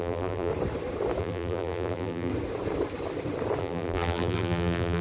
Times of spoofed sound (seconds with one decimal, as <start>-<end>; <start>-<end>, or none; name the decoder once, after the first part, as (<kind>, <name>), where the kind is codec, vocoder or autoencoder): 0.0-0.5 (vocoder, BigVGAN v2); 1.2-2.3; 3.6-5.0